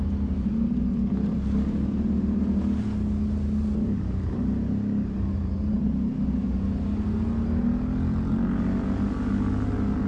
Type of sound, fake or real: real